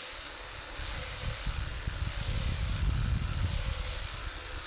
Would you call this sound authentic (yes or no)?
yes